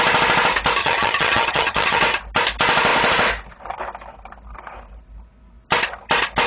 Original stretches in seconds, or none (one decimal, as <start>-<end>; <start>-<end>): 0.0-0.8; 2.0-6.5